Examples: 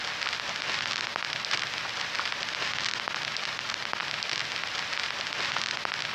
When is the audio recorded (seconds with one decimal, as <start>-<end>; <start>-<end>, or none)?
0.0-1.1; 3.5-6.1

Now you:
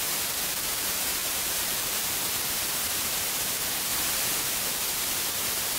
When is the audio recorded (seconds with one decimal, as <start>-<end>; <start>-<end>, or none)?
3.9-4.4

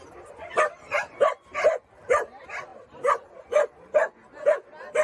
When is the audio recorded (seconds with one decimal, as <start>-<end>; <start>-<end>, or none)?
0.0-2.7; 3.2-5.0

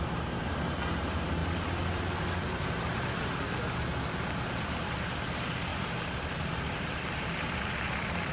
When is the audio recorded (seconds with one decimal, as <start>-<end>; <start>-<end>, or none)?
0.0-5.7; 7.8-8.3